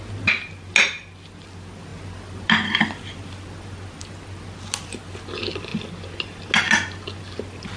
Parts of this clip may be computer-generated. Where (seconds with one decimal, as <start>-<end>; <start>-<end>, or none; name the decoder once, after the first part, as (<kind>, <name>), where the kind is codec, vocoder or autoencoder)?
none